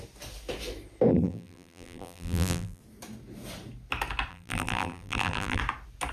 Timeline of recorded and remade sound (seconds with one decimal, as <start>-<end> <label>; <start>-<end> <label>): 0.0-1.1 recorded; 1.1-2.8 remade; 2.8-4.3 recorded; 4.3-5.6 remade; 5.6-6.1 recorded